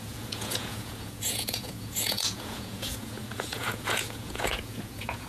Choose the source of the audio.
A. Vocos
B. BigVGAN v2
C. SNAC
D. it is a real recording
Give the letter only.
A